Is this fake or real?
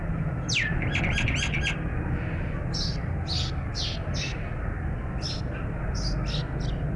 real